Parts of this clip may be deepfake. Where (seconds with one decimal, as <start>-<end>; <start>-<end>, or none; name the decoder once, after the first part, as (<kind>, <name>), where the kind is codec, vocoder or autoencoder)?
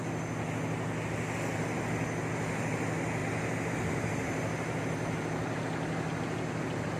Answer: none